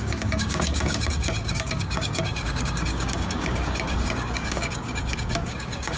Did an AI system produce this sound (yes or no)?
yes